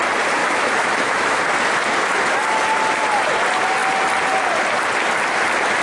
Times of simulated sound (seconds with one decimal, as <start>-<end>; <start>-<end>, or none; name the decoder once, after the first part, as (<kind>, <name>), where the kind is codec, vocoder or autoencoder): 0.4-1.4 (autoencoder, DAC-VAE)

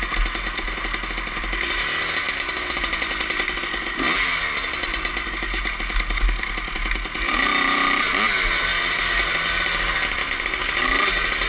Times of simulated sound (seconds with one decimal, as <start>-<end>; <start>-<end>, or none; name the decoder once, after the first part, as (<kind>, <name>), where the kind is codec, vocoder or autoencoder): none

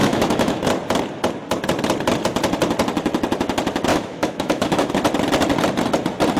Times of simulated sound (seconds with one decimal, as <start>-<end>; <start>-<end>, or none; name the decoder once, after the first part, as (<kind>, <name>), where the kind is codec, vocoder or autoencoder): 0.0-0.6 (autoencoder, DAC-VAE); 3.9-4.9

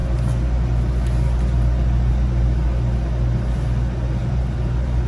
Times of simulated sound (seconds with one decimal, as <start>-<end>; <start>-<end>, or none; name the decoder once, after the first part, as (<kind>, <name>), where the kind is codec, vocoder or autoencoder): 4.2-5.1 (vocoder, BigVGAN v2)